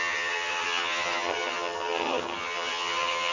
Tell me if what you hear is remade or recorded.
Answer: remade